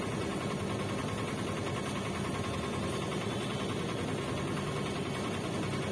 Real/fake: real